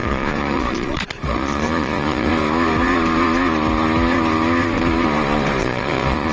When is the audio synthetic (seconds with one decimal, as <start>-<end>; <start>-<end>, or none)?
0.0-2.3; 5.6-6.3